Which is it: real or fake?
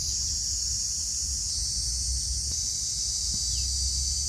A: real